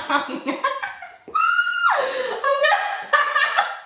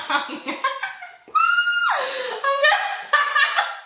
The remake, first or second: first